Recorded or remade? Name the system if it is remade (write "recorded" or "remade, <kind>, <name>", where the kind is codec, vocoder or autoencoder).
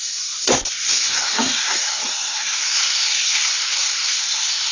remade, codec, SNAC